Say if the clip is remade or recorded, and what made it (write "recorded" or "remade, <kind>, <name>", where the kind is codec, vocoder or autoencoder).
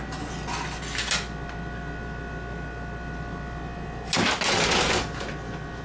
recorded